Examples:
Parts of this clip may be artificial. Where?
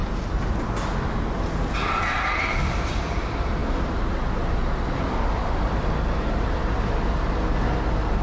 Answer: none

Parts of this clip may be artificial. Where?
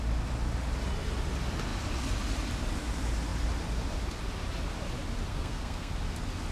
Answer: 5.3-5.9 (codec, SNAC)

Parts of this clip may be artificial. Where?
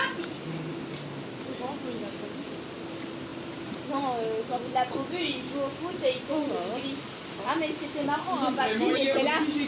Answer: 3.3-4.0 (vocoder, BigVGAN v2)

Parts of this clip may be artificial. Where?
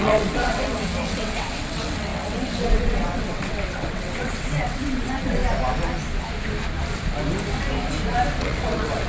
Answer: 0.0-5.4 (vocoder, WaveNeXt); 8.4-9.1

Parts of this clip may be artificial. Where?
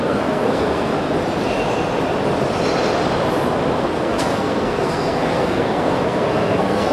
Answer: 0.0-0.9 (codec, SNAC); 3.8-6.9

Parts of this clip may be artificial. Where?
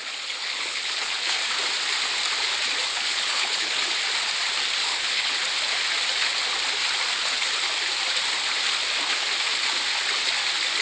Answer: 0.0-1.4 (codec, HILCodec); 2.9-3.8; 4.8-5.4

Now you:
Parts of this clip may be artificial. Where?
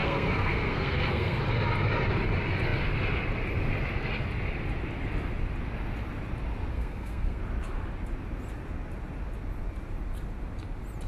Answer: 0.0-1.4 (codec, SNAC); 6.7-7.4